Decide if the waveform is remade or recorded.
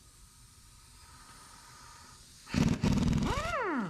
recorded